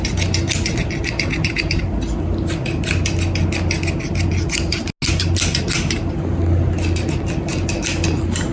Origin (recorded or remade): recorded